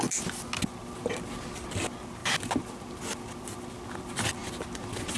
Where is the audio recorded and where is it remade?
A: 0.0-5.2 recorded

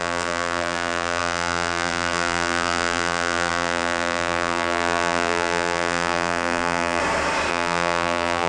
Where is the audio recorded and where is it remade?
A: 0.0-7.0 remade; 7.0-7.5 recorded; 7.5-8.5 remade

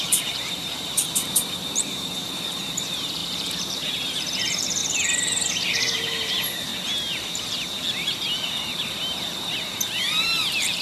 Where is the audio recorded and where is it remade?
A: 0.0-4.8 remade; 4.8-5.7 recorded; 5.7-6.7 remade; 6.7-9.8 recorded; 9.8-10.8 remade